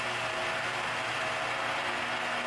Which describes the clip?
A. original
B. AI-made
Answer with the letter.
A